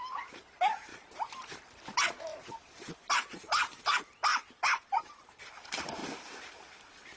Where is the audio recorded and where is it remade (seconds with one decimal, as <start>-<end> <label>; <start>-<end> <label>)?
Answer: 0.0-0.9 recorded; 0.9-1.5 remade; 1.5-2.3 recorded; 2.3-3.8 remade; 3.8-4.3 recorded; 4.3-5.2 remade; 5.2-7.2 recorded